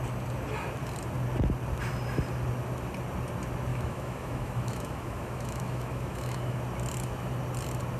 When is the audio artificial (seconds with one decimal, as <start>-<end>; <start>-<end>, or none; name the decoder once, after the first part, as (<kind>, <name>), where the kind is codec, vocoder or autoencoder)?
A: 3.7-6.6 (autoencoder, DAC-VAE)